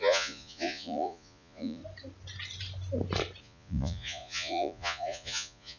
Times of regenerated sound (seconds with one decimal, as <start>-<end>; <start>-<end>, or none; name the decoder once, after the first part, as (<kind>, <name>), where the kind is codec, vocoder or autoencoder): 0.0-1.8 (vocoder, Vocos); 3.4-5.8

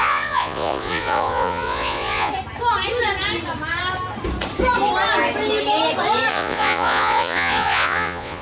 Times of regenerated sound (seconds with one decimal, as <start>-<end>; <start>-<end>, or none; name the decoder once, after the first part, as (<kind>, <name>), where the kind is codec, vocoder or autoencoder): 0.0-2.3 (vocoder, Vocos); 6.3-8.4

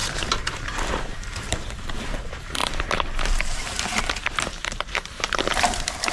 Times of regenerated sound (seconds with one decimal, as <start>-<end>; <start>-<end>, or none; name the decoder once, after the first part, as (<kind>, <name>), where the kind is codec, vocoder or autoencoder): 0.0-6.1 (vocoder, BigVGAN v2)

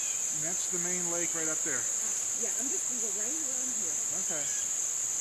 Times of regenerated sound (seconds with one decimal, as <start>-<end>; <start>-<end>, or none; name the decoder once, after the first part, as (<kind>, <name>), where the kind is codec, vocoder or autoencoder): none